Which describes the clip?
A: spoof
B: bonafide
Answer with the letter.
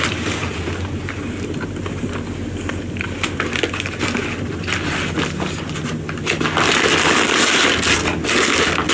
B